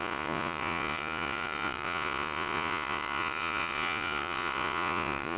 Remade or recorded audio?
remade